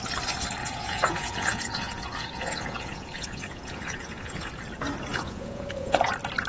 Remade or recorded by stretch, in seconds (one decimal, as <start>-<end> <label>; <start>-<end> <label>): 0.0-0.6 recorded; 0.6-4.5 remade; 4.5-5.1 recorded; 5.1-6.0 remade; 6.0-6.5 recorded